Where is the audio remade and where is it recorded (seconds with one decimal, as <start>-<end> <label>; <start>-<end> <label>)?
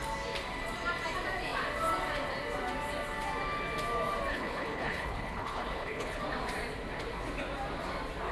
0.0-4.3 recorded; 4.3-6.2 remade; 6.2-8.3 recorded